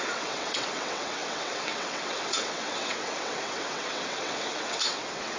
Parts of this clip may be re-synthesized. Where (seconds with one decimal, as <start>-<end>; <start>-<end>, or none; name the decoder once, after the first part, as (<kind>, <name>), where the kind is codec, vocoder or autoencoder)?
0.0-5.4 (vocoder, WaveNeXt)